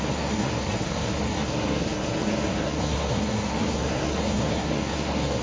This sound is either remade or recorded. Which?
remade